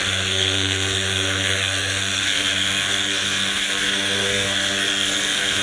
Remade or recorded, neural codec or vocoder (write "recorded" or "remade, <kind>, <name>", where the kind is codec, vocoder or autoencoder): remade, codec, SNAC